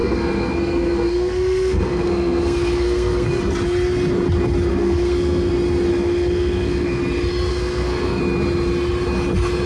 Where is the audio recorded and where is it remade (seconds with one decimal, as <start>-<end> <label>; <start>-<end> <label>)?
0.0-3.4 remade; 3.4-4.7 recorded; 4.7-5.5 remade; 5.5-5.9 recorded; 5.9-7.0 remade; 7.0-7.5 recorded; 7.5-8.2 remade; 8.2-9.7 recorded